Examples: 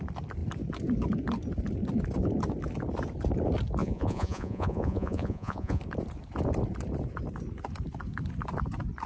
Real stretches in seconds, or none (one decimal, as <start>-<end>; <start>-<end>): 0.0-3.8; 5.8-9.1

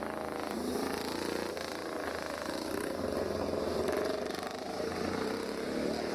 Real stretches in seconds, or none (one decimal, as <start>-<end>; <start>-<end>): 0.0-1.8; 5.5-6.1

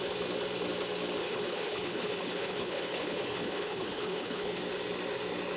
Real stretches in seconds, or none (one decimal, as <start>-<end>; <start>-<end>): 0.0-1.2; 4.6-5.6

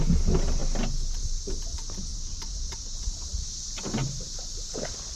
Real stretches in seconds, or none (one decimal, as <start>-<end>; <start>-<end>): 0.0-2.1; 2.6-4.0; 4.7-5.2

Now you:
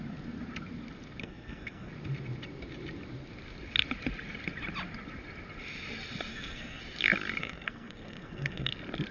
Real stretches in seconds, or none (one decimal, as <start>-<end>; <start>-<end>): 0.0-1.2; 1.9-6.3; 6.8-7.4; 8.7-9.1

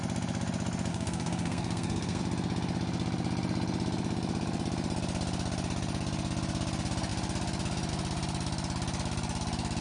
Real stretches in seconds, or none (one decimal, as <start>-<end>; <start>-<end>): 0.0-0.9; 2.2-9.8

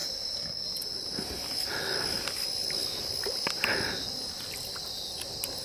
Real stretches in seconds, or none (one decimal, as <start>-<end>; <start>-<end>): 0.0-5.6

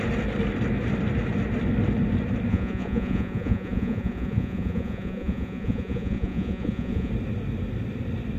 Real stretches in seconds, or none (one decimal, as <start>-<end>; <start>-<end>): 0.0-2.5; 7.1-8.4